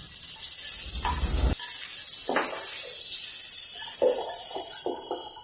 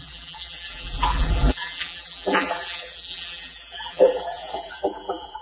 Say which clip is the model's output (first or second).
second